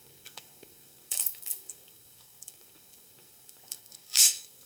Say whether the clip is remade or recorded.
remade